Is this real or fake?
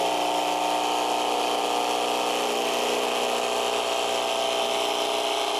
real